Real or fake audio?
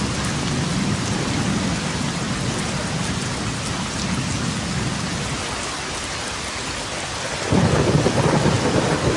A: real